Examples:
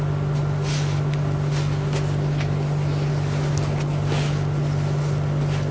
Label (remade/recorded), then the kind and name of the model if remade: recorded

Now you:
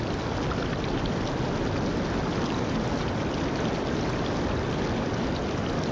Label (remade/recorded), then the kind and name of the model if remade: recorded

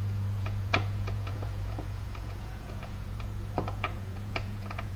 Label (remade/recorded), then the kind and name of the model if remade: remade, vocoder, Vocos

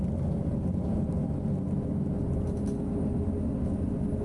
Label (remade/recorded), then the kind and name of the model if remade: recorded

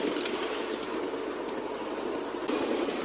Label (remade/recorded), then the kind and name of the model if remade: recorded